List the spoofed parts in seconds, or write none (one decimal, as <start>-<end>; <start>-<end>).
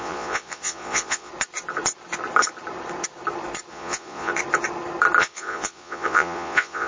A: 0.0-1.3; 3.7-4.3; 5.2-6.9